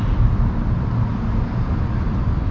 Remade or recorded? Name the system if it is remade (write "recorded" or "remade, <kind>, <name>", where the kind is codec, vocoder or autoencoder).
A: recorded